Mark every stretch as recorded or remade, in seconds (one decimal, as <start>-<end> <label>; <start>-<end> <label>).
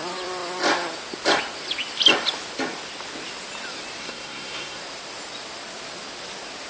0.0-4.0 recorded; 4.0-4.8 remade; 4.8-6.7 recorded